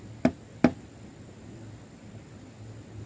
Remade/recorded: recorded